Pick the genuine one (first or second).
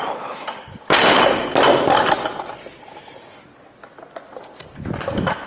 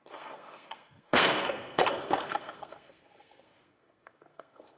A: first